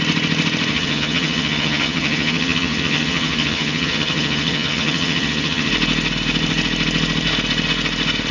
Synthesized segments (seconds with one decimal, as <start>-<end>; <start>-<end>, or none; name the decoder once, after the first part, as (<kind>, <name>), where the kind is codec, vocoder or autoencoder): 0.7-5.7 (vocoder, HiFi-GAN)